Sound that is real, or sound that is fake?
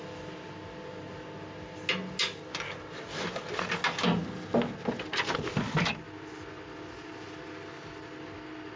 real